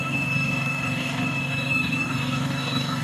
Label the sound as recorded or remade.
remade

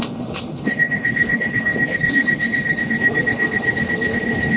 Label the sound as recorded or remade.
remade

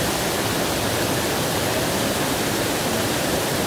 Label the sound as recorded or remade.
remade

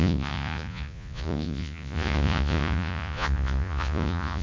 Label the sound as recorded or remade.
remade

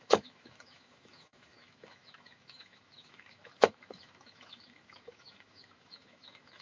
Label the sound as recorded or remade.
remade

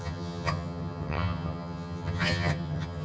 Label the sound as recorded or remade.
remade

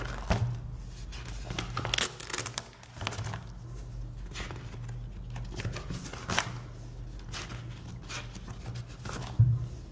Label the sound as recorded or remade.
recorded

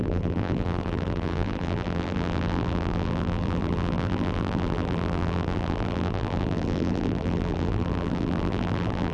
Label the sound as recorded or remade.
remade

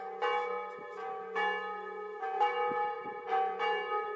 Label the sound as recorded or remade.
recorded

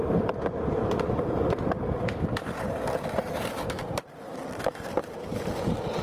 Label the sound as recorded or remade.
remade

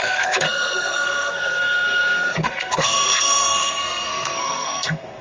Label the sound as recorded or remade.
remade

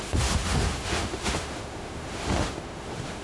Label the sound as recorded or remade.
remade